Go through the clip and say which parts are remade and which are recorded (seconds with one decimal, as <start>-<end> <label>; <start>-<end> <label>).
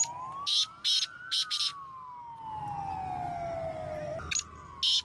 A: 0.0-5.0 recorded